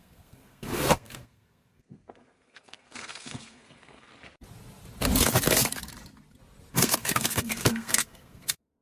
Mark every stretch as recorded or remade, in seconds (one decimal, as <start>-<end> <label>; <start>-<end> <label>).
0.0-4.1 remade; 4.1-6.7 recorded; 6.7-8.8 remade